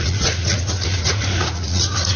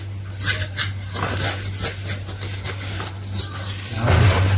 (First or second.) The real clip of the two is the second